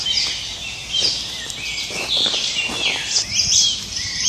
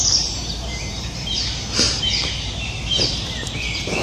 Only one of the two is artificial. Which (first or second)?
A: second